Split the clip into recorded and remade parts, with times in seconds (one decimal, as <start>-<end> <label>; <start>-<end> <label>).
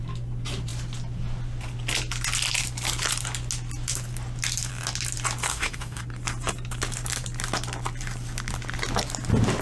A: 0.0-5.5 recorded; 5.5-6.0 remade; 6.0-9.6 recorded